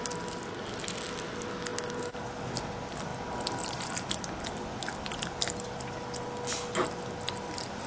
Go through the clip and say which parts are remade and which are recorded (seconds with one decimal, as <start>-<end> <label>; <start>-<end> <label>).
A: 0.0-7.9 recorded